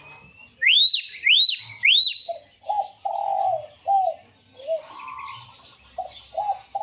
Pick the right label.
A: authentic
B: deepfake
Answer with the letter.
A